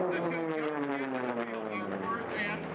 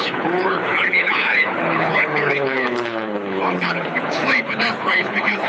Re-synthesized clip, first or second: second